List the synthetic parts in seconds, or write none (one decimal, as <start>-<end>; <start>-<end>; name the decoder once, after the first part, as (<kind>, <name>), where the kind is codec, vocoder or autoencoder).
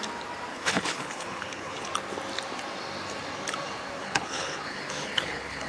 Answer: 0.5-1.9 (codec, HILCodec); 4.0-5.7